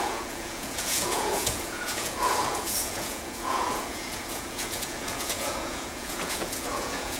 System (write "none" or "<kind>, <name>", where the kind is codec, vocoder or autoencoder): vocoder, Vocos